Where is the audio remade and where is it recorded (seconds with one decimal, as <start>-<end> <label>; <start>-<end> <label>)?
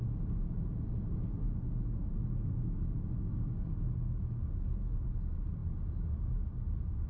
0.0-3.3 recorded; 3.3-3.8 remade; 3.8-7.1 recorded